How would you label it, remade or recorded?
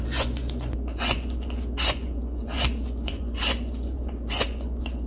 remade